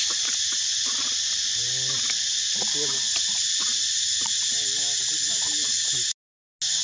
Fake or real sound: real